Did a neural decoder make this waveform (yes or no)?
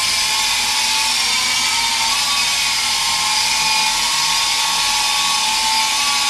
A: no